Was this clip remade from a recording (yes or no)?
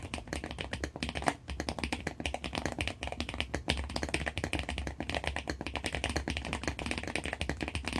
no